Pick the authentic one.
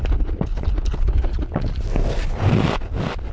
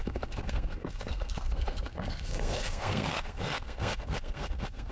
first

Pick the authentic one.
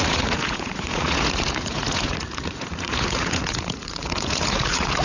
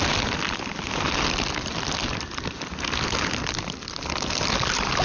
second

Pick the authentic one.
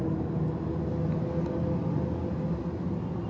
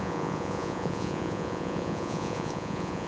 first